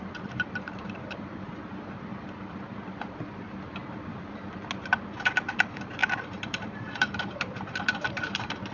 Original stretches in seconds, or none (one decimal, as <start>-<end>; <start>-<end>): 2.1-3.0; 3.8-5.6